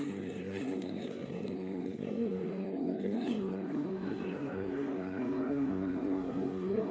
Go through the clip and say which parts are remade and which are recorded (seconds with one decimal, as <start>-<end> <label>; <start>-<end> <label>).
0.0-6.9 remade